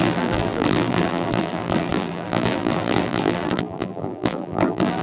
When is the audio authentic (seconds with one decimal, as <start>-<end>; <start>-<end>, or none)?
none